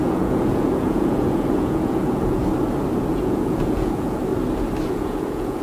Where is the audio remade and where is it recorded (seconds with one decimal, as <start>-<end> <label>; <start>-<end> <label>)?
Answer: 0.0-2.4 remade; 2.4-3.1 recorded; 3.1-4.3 remade; 4.3-4.9 recorded; 4.9-5.6 remade